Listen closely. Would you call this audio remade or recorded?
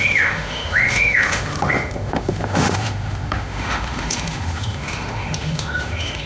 remade